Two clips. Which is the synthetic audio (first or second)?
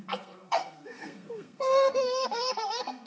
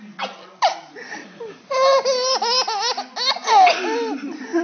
first